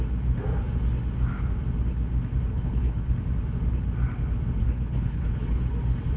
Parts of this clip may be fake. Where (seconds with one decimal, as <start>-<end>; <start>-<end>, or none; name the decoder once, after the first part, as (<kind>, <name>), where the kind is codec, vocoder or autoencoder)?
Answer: 2.5-3.1 (codec, HILCodec); 4.6-5.7